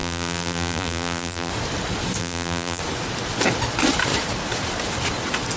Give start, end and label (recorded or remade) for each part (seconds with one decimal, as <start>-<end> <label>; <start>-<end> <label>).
0.0-1.5 remade; 1.5-2.2 recorded; 2.2-2.8 remade; 2.8-5.6 recorded